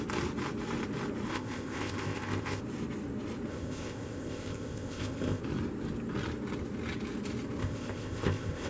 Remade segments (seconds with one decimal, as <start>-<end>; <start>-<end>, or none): 1.3-2.6; 3.5-5.4; 7.6-8.7